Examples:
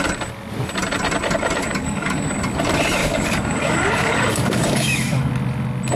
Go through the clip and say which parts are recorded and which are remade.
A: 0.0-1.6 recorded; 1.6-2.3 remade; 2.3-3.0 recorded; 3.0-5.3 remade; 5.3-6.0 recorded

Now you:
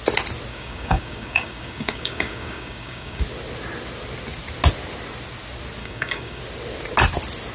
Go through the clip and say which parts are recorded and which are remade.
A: 0.0-0.5 recorded; 0.5-3.2 remade; 3.2-5.8 recorded; 5.8-6.4 remade; 6.4-7.5 recorded

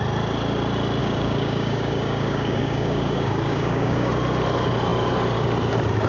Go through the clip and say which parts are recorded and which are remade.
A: 0.0-1.0 recorded; 1.0-4.1 remade; 4.1-6.1 recorded

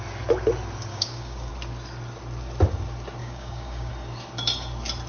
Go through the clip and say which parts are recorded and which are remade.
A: 0.0-0.9 recorded; 0.9-1.5 remade; 1.5-3.2 recorded; 3.2-3.9 remade; 3.9-5.1 recorded

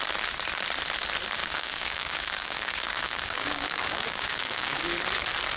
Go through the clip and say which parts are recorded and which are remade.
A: 0.0-1.4 recorded; 1.4-4.8 remade; 4.8-5.6 recorded

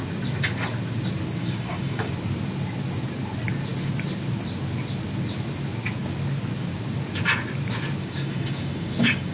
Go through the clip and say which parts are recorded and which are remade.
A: 0.0-1.4 recorded; 1.4-2.1 remade; 2.1-8.0 recorded; 8.0-9.3 remade